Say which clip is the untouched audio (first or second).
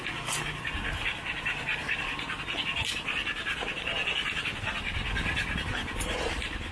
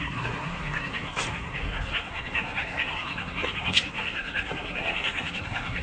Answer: first